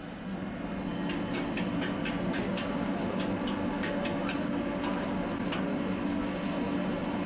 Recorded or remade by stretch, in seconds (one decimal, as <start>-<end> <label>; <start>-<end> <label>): 0.0-7.3 recorded